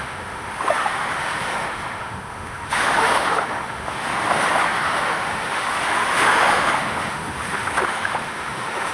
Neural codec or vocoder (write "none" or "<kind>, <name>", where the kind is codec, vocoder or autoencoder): autoencoder, DAC-VAE